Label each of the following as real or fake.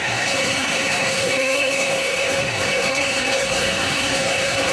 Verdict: fake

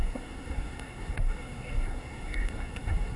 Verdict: fake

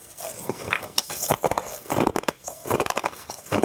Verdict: fake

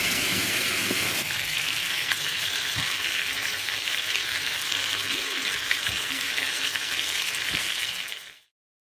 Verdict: fake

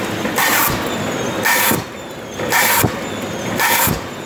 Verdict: real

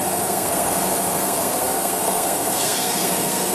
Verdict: fake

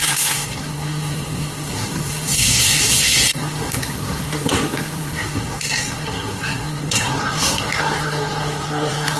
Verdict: fake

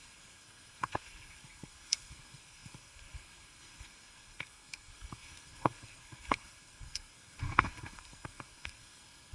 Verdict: fake